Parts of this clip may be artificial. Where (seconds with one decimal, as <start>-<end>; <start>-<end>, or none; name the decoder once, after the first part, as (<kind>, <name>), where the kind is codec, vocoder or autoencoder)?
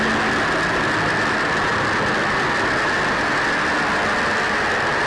none